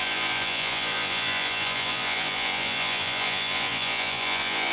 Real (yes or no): no